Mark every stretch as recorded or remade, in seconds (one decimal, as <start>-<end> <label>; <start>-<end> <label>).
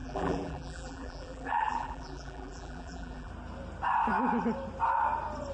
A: 0.0-3.3 remade; 3.3-5.5 recorded